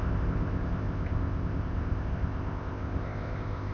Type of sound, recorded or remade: remade